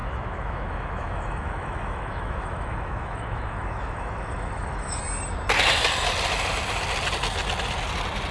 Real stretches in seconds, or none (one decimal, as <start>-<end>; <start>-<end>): 5.0-8.3